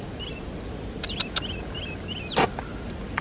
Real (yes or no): yes